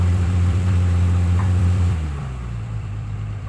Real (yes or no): no